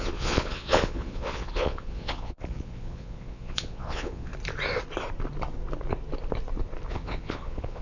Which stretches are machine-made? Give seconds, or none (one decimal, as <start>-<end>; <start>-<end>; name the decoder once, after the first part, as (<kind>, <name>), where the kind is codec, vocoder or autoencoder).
0.0-4.3 (vocoder, Vocos); 6.9-7.8